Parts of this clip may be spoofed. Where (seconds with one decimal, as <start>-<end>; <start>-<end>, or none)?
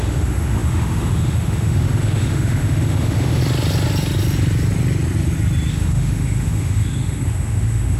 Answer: 0.0-3.4; 5.7-8.0